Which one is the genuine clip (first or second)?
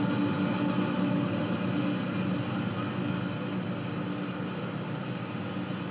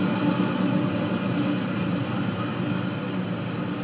first